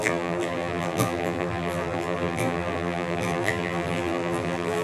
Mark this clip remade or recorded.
remade